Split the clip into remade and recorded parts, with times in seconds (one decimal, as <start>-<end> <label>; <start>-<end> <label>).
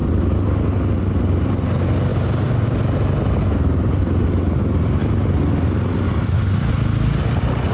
0.0-7.7 recorded